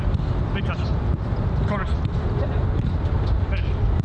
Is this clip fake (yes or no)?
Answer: yes